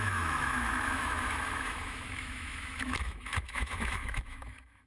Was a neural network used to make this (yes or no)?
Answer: yes